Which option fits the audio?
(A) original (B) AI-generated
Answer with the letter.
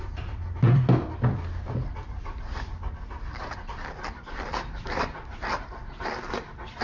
B